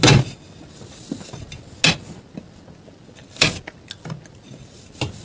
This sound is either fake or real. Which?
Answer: real